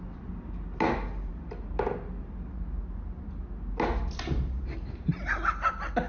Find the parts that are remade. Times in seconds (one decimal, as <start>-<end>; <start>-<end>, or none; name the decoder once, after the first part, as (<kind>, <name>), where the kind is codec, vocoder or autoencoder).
none